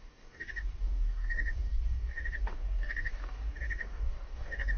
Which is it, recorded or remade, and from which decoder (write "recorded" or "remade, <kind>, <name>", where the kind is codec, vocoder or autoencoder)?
remade, codec, DAC